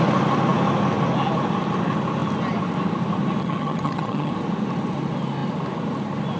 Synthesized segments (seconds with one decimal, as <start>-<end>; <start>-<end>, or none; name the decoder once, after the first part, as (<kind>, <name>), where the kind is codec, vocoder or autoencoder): 3.4-4.3 (vocoder, HiFi-GAN)